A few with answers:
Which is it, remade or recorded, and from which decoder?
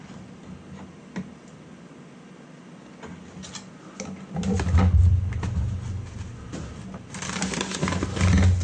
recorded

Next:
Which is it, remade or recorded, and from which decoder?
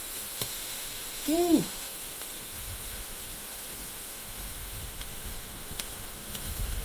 remade, autoencoder, DAC-VAE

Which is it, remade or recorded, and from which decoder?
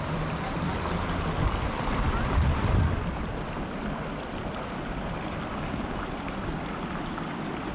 remade, vocoder, BigVGAN v2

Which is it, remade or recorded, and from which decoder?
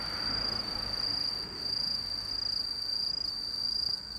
recorded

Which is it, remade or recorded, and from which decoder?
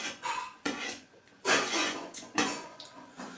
remade, vocoder, Vocos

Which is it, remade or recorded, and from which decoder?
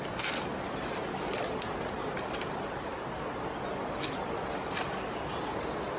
recorded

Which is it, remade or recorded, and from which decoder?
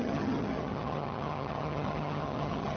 remade, vocoder, HiFi-GAN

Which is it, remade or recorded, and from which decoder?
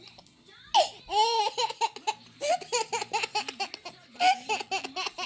recorded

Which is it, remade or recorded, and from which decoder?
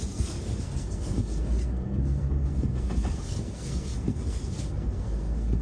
remade, codec, SNAC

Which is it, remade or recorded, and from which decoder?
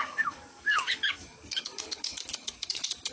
remade, codec, DAC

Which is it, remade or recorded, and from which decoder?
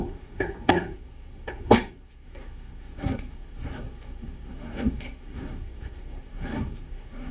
remade, codec, SNAC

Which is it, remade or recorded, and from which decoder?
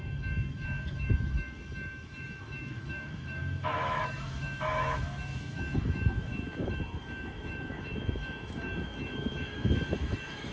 remade, autoencoder, DAC-VAE